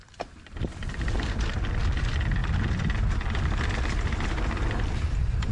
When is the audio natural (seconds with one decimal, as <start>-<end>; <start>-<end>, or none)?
0.0-5.5